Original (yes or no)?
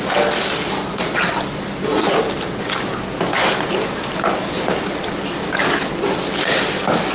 yes